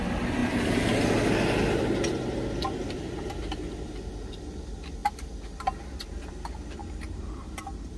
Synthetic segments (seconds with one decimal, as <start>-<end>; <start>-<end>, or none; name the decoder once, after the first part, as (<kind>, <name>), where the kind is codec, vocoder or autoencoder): 6.8-7.6 (vocoder, BigVGAN v2)